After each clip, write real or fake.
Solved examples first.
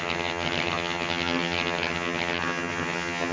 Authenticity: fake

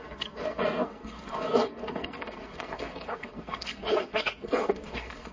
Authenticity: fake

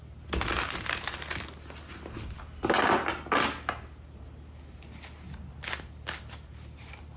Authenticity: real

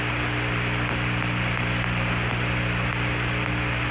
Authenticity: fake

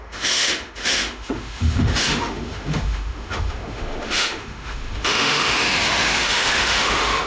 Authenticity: fake